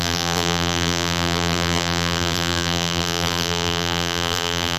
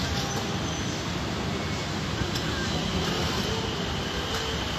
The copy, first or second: first